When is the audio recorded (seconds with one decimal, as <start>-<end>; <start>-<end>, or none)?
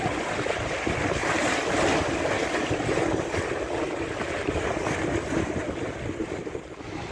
0.0-7.1